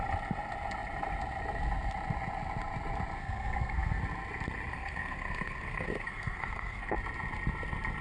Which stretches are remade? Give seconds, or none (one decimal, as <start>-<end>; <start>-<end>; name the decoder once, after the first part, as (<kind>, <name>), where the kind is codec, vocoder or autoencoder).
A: 3.2-4.0 (codec, SNAC); 4.7-6.9

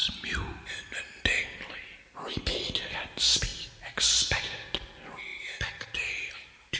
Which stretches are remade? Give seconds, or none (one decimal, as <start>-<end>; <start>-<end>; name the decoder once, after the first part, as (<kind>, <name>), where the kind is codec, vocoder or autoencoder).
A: 3.5-4.7 (vocoder, BigVGAN v2); 5.3-6.8

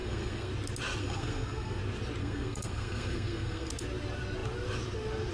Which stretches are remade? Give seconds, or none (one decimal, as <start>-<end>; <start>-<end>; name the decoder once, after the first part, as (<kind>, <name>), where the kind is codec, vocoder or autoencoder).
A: 0.0-0.5 (codec, SNAC); 1.0-1.8; 2.2-3.7

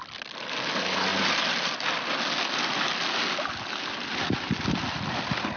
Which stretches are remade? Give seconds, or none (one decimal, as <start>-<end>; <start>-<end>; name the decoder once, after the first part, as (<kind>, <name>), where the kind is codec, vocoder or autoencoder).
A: none

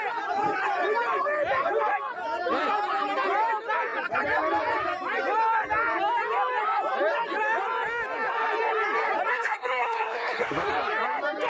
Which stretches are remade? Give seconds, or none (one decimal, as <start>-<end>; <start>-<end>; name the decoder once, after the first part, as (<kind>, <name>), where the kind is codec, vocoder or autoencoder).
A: 9.3-10.7 (codec, SNAC)

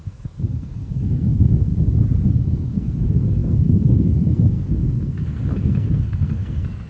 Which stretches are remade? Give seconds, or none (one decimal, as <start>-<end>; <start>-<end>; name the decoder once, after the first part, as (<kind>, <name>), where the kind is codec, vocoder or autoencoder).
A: 0.0-1.7 (codec, SNAC); 2.3-6.9

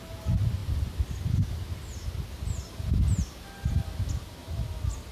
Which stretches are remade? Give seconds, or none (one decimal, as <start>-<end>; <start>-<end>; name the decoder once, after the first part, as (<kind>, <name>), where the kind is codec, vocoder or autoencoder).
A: none